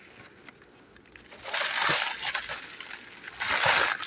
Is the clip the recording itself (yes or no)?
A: yes